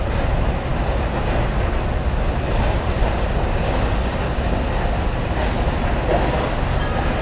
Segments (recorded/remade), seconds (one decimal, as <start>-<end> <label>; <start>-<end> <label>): 0.0-7.2 recorded